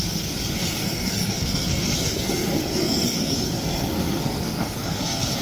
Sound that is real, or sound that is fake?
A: fake